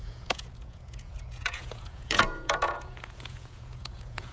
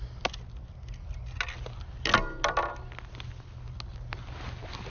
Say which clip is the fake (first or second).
first